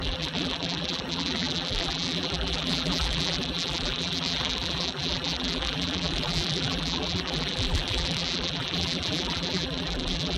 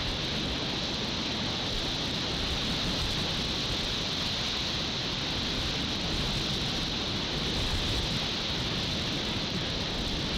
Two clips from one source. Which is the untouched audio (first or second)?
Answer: second